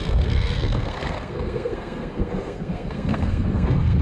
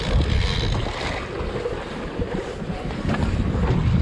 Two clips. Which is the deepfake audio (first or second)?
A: first